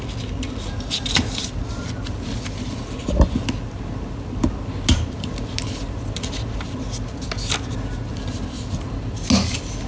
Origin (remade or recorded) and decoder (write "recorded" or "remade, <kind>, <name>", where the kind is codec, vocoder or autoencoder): recorded